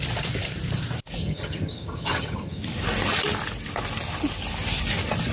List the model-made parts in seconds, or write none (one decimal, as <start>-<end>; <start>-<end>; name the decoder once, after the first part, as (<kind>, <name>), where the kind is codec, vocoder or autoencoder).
1.2-2.6 (vocoder, HiFi-GAN)